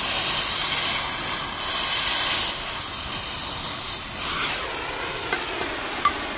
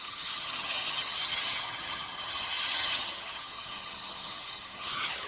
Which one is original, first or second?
first